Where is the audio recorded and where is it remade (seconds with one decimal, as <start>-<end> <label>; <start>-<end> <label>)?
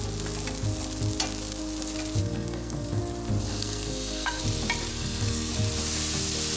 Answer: 0.0-2.2 recorded; 2.2-3.0 remade; 3.0-3.5 recorded; 3.5-4.4 remade; 4.4-4.9 recorded; 4.9-5.5 remade; 5.5-6.6 recorded